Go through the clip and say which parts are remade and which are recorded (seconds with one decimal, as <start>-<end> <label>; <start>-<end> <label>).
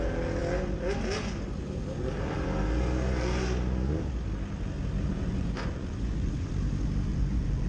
0.0-5.1 recorded; 5.1-6.5 remade; 6.5-7.1 recorded; 7.1-7.7 remade